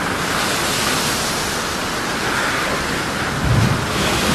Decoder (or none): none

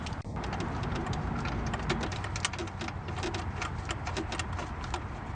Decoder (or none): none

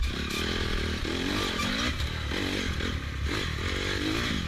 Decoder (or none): none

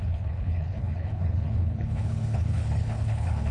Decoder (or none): codec, HILCodec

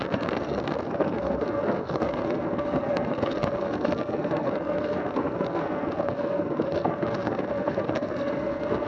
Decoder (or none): codec, SNAC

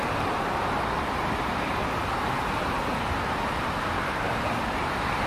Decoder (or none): none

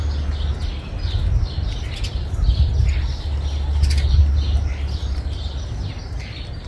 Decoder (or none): none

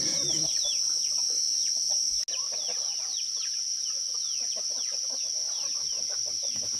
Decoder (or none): none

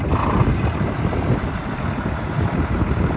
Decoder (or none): none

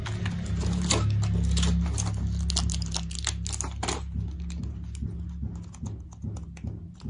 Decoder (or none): none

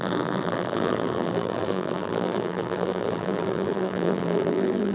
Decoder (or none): vocoder, BigVGAN v2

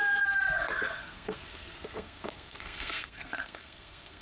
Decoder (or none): codec, SNAC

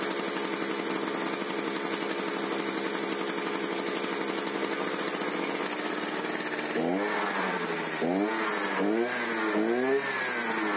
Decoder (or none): none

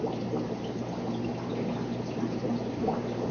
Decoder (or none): none